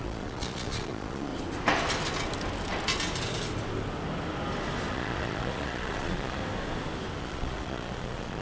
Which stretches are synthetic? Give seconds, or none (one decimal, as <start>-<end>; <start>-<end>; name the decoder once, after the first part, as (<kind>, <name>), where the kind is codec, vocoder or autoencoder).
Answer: 0.0-1.3 (vocoder, Vocos); 4.9-6.4; 7.2-8.4